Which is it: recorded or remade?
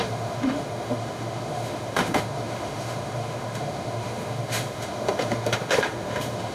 remade